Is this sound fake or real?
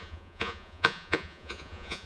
fake